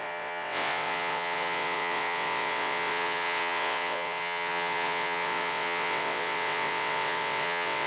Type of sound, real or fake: fake